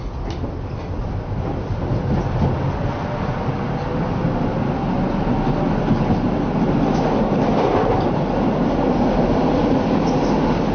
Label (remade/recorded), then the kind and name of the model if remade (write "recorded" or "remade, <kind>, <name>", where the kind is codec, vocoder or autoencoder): recorded